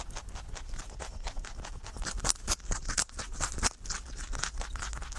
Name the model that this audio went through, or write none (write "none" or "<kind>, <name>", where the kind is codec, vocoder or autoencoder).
none